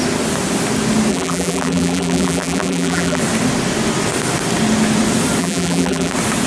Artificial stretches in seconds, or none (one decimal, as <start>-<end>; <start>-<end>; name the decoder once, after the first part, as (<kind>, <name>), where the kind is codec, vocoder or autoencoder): 1.1-3.2 (vocoder, BigVGAN v2); 5.4-6.1